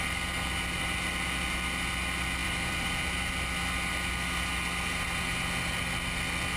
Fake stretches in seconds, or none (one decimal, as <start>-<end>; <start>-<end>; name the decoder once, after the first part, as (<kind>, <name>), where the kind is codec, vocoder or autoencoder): 2.4-3.2 (vocoder, BigVGAN v2)